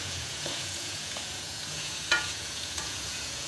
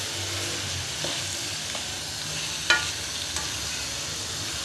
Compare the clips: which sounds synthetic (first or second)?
first